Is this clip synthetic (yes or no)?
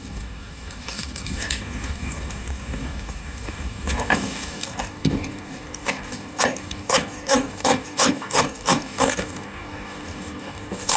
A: yes